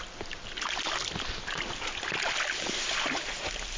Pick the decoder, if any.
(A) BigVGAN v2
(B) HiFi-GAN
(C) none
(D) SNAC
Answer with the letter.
C